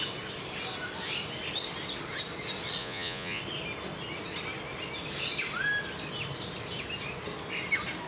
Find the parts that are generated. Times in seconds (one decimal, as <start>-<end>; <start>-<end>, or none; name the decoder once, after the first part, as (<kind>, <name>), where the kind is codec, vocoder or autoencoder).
2.8-3.4 (vocoder, Vocos)